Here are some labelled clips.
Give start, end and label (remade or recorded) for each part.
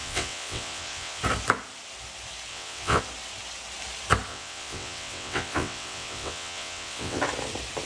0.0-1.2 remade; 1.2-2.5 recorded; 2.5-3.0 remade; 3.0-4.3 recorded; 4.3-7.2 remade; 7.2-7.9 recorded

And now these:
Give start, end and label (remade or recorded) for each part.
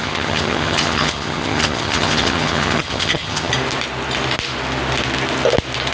0.0-3.5 remade; 3.5-5.9 recorded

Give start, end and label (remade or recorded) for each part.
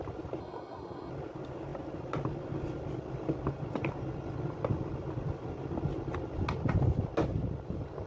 0.0-0.4 recorded; 0.4-1.1 remade; 1.1-8.1 recorded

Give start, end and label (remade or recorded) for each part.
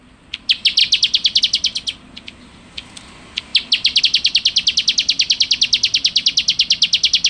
0.0-7.3 recorded